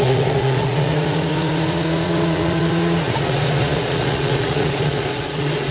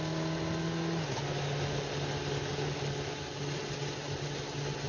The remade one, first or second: first